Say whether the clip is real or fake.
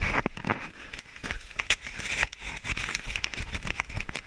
fake